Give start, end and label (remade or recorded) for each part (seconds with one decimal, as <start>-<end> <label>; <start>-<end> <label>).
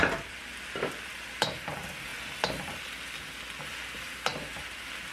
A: 0.0-5.1 recorded